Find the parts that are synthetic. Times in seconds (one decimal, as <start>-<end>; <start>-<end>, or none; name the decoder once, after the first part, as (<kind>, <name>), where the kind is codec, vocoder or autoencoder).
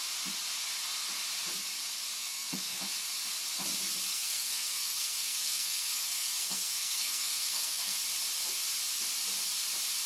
2.2-2.8 (codec, SNAC); 4.1-8.0